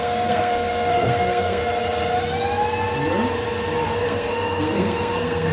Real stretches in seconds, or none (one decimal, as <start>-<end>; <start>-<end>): 1.6-3.8